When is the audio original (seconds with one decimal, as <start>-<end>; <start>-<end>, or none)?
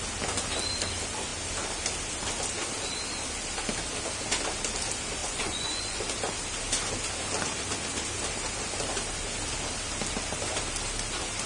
0.0-5.2; 6.0-11.5